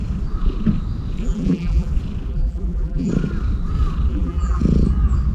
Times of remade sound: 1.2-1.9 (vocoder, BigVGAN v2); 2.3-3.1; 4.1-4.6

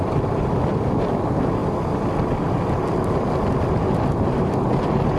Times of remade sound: none

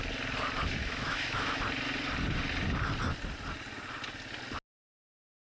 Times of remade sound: 0.8-1.6 (autoencoder, DAC-VAE)

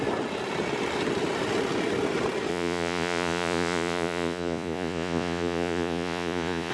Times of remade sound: 2.5-6.7 (vocoder, Vocos)

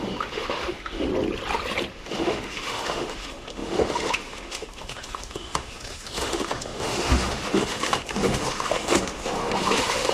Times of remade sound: 0.0-1.1 (autoencoder, DAC-VAE); 1.9-10.1

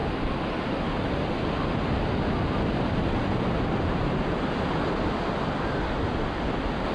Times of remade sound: none